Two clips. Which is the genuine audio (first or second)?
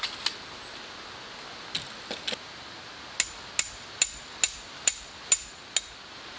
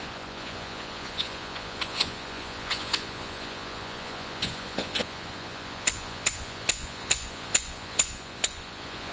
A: first